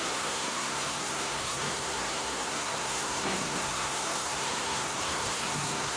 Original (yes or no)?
no